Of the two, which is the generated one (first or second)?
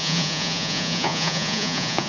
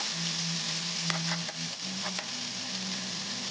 first